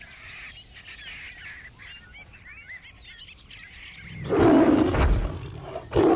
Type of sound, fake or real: real